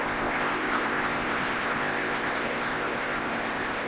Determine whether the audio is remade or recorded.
remade